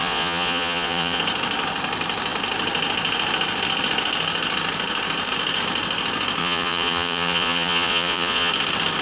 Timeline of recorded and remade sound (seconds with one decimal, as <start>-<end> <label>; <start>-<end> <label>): 0.0-1.2 remade; 1.2-6.4 recorded; 6.4-8.5 remade; 8.5-9.0 recorded